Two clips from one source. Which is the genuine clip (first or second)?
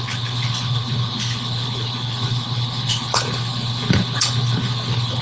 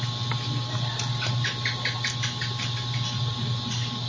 second